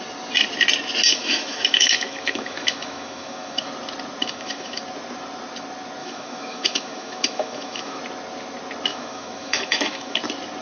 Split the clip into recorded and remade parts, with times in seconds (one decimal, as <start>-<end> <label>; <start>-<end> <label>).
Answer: 0.0-1.1 recorded; 1.1-3.7 remade; 3.7-4.2 recorded; 4.2-4.8 remade; 4.8-6.0 recorded; 6.0-8.0 remade; 8.0-8.9 recorded; 8.9-10.2 remade; 10.2-10.6 recorded